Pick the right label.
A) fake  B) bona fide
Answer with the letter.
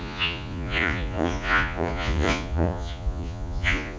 A